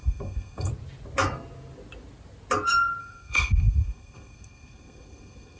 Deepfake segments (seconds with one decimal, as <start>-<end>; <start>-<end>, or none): 0.0-0.7; 3.0-5.6